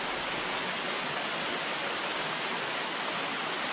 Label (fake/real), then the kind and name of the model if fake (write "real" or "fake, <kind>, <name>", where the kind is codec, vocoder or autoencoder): real